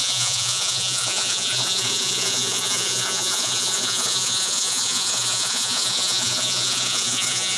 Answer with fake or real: fake